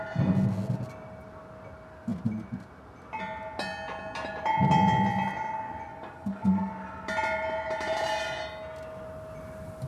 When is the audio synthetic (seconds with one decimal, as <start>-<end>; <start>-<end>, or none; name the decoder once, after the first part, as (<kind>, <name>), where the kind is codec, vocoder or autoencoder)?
5.9-6.7 (codec, DAC)